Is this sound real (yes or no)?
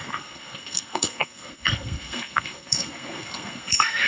no